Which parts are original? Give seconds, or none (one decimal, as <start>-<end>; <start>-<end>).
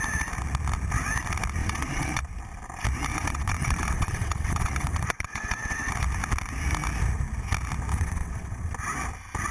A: 0.0-1.6; 2.2-3.1; 5.9-7.9; 8.7-9.5